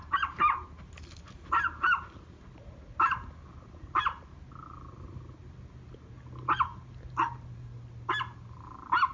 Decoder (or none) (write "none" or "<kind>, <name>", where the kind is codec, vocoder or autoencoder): none